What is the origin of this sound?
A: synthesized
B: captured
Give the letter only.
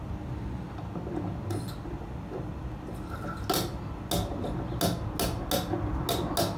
B